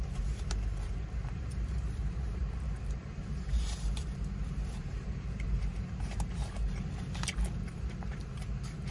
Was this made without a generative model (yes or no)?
no